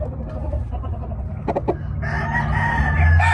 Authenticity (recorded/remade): recorded